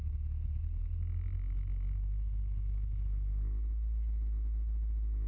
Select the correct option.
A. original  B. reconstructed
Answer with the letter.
A